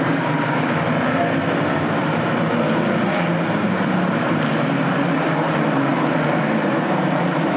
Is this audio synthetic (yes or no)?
yes